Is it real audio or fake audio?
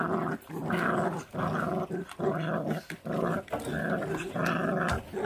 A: real